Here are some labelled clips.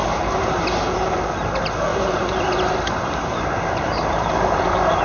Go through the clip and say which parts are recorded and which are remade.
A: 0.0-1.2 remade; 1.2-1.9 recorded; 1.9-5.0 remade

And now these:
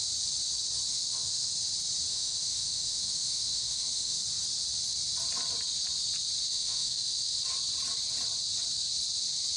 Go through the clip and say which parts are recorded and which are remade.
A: 0.0-0.9 recorded; 0.9-1.5 remade; 1.5-2.1 recorded; 2.1-4.2 remade; 4.2-6.5 recorded; 6.5-7.4 remade; 7.4-9.6 recorded